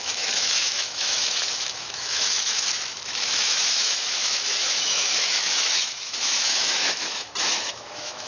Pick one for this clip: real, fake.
fake